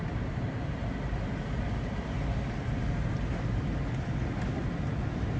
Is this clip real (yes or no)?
yes